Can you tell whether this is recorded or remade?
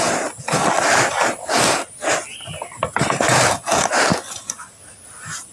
recorded